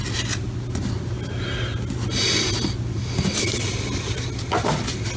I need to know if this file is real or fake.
real